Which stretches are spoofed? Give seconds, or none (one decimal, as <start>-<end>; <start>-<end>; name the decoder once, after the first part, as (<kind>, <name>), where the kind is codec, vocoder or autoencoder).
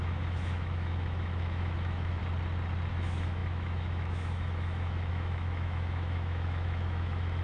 0.0-2.2 (autoencoder, DAC-VAE); 2.9-7.4